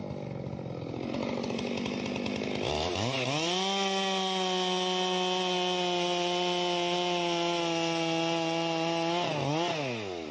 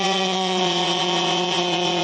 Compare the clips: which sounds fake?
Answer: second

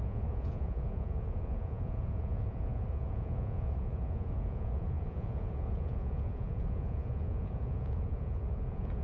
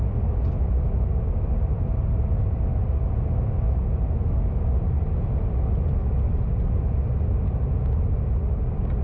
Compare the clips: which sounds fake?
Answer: first